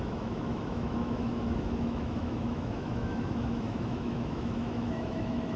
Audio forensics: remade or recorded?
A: remade